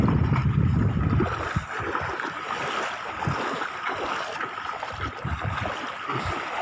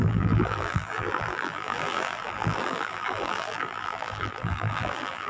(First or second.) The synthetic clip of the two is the second